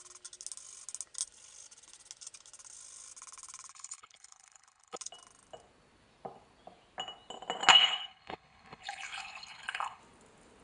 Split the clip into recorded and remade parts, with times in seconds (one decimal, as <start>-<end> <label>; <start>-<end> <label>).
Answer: 0.0-3.7 recorded; 3.7-5.0 remade; 5.0-7.7 recorded; 7.7-10.0 remade; 10.0-10.6 recorded

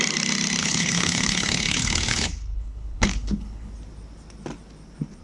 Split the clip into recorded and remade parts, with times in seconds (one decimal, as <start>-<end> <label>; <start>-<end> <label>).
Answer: 0.0-0.6 recorded; 0.6-3.7 remade; 3.7-5.2 recorded

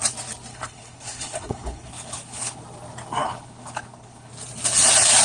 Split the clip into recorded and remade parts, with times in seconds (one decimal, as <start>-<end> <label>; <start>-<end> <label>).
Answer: 0.0-0.5 recorded; 0.5-2.6 remade; 2.6-3.2 recorded; 3.2-4.3 remade; 4.3-5.2 recorded

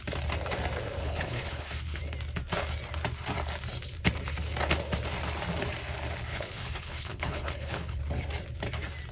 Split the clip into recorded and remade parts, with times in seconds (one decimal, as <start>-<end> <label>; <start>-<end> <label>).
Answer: 0.0-1.0 recorded; 1.0-2.0 remade; 2.0-6.3 recorded; 6.3-8.0 remade; 8.0-9.1 recorded

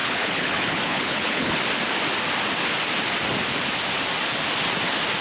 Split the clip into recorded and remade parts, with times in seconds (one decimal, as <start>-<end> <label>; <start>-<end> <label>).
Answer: 0.0-1.6 remade; 1.6-5.2 recorded

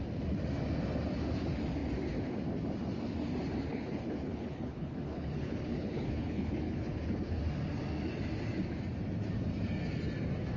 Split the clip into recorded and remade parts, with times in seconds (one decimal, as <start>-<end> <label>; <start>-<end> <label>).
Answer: 0.0-3.7 recorded; 3.7-7.4 remade; 7.4-10.6 recorded

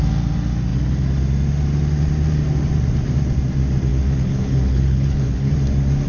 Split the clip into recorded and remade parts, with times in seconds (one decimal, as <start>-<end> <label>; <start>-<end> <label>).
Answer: 0.0-3.9 recorded; 3.9-5.5 remade; 5.5-6.1 recorded